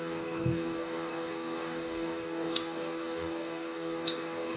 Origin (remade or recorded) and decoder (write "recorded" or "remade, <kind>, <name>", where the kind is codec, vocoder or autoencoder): remade, codec, DAC